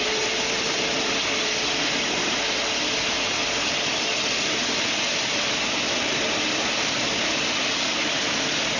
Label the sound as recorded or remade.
recorded